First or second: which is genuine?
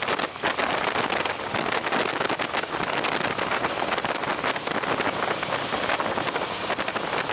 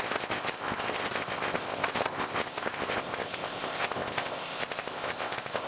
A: first